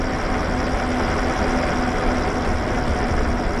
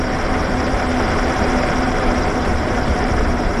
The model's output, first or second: second